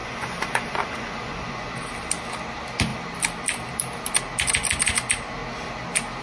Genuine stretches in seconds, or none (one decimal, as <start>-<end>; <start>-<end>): 1.7-6.2